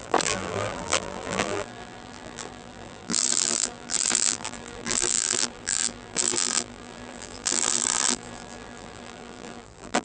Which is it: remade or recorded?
remade